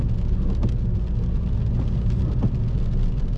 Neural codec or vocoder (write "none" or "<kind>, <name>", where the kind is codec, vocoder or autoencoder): none